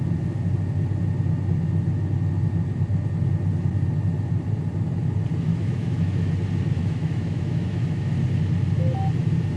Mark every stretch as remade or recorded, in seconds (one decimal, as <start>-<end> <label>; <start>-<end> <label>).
0.0-5.5 recorded; 5.5-6.3 remade; 6.3-6.8 recorded; 6.8-8.1 remade; 8.1-9.6 recorded